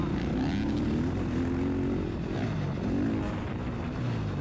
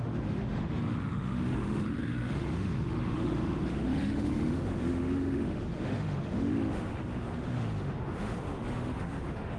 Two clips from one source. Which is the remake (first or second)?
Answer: second